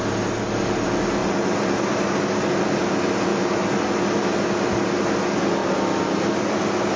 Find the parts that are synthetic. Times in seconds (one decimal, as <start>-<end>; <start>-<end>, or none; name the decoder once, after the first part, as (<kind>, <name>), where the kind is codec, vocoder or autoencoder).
1.2-2.6 (vocoder, BigVGAN v2); 5.6-6.3